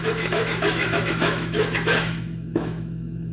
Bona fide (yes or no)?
no